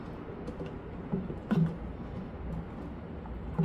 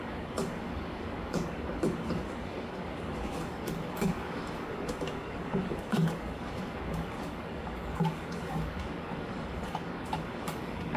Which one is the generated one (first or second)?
second